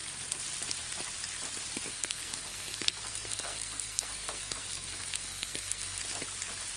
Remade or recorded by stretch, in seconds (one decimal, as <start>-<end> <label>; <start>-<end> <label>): 0.0-1.9 recorded; 1.9-6.0 remade; 6.0-6.8 recorded